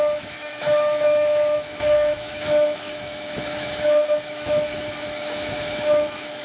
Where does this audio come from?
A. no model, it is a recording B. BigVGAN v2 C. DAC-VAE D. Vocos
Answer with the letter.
C